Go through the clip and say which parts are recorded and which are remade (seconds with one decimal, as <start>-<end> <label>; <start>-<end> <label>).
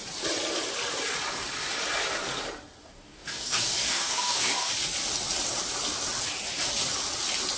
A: 0.0-2.8 recorded; 2.8-4.7 remade; 4.7-7.6 recorded